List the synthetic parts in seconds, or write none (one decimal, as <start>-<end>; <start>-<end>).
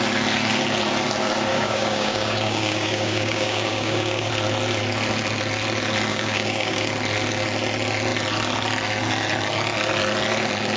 1.5-4.3; 6.1-6.9